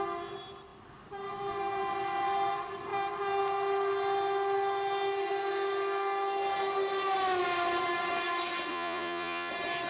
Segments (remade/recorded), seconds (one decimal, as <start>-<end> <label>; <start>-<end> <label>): 0.0-8.7 recorded; 8.7-9.5 remade; 9.5-9.9 recorded